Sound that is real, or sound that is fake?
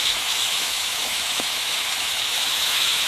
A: fake